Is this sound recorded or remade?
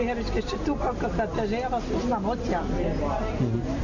recorded